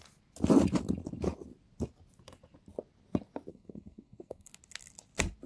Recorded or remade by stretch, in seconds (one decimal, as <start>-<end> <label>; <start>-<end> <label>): 0.0-3.5 recorded; 3.5-4.5 remade; 4.5-5.5 recorded